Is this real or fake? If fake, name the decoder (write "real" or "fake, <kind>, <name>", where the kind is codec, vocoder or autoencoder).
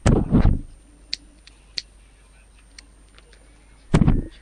real